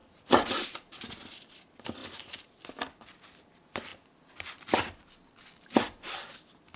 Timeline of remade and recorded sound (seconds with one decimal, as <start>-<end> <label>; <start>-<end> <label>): 0.0-1.1 remade; 1.1-2.0 recorded; 2.0-2.7 remade; 2.7-6.8 recorded